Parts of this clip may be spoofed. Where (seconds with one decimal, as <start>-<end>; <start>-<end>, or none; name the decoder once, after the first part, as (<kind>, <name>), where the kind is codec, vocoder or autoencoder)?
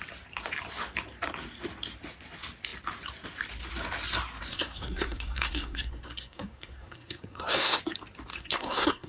4.5-7.8 (codec, SNAC); 8.3-9.1